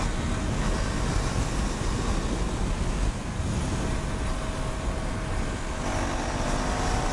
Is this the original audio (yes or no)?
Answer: yes